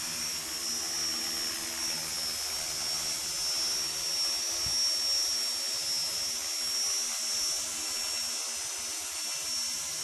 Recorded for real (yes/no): yes